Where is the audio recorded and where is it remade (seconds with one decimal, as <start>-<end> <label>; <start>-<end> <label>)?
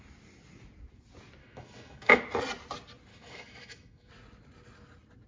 0.0-1.4 recorded; 1.4-2.2 remade; 2.2-3.1 recorded; 3.1-4.1 remade; 4.1-5.3 recorded